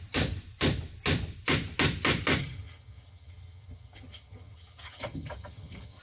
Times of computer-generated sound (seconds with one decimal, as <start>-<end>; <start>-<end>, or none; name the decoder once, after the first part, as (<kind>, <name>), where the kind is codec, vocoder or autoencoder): 2.4-6.0 (vocoder, HiFi-GAN)